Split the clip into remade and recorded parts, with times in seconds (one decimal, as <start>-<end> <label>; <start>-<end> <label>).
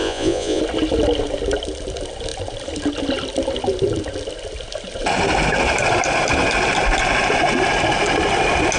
0.0-0.6 remade; 0.6-8.8 recorded